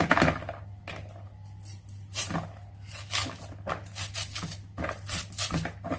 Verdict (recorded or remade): recorded